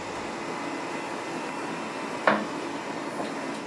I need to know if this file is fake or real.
real